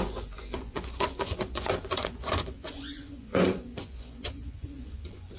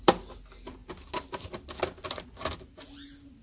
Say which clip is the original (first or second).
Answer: second